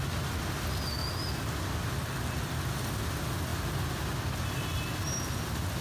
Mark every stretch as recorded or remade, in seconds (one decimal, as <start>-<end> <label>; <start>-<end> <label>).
0.0-5.8 recorded